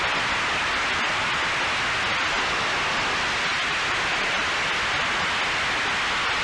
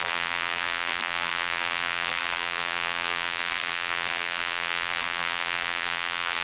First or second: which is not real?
second